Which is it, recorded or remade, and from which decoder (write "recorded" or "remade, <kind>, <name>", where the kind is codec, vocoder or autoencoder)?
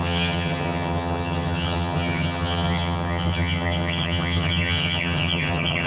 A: remade, vocoder, HiFi-GAN